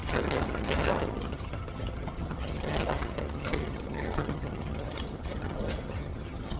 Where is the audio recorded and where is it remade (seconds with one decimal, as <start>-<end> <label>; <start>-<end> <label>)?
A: 0.0-6.6 remade